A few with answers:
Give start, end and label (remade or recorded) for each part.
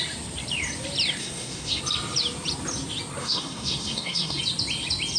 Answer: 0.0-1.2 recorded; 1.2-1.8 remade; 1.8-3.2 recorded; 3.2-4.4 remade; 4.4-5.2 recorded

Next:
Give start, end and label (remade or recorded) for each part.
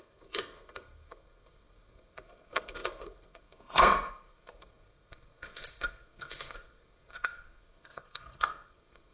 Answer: 0.0-9.1 remade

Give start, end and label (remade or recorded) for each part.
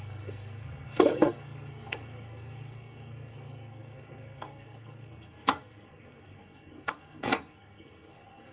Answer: 0.0-8.5 remade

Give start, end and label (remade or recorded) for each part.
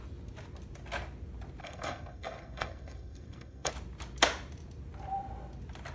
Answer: 0.0-1.6 recorded; 1.6-3.7 remade; 3.7-5.9 recorded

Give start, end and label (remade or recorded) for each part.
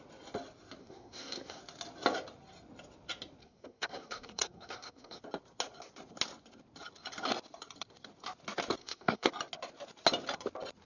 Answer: 0.0-0.8 recorded; 0.8-1.6 remade; 1.6-3.4 recorded; 3.4-5.2 remade; 5.2-8.8 recorded; 8.8-9.3 remade; 9.3-10.9 recorded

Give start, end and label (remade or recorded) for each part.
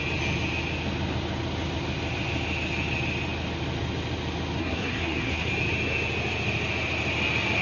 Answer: 0.0-4.6 recorded; 4.6-5.5 remade; 5.5-7.6 recorded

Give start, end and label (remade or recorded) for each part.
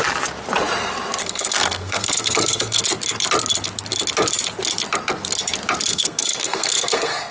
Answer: 0.0-1.2 recorded; 1.2-2.8 remade; 2.8-5.9 recorded; 5.9-7.3 remade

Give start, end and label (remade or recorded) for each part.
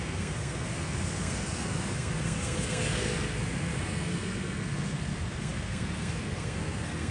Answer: 0.0-7.1 remade